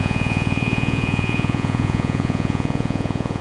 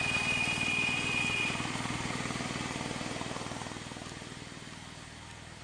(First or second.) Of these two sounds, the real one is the second